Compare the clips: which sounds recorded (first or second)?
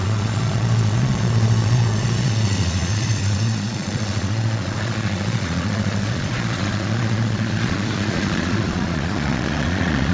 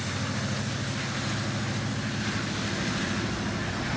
second